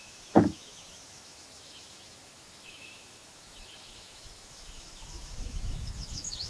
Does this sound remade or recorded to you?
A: remade